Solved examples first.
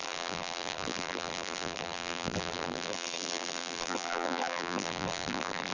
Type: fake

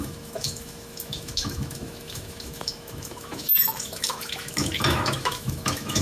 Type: fake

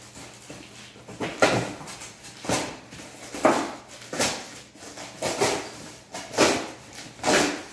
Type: real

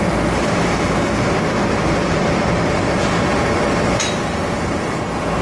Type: real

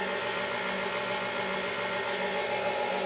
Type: real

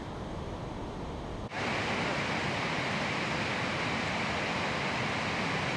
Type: real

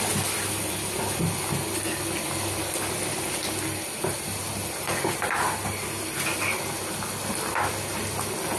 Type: real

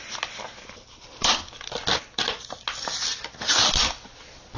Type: real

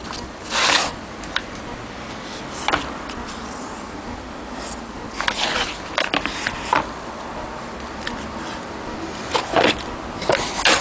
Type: real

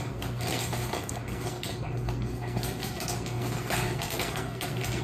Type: fake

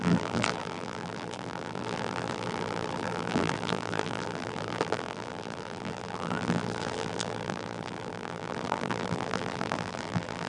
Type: fake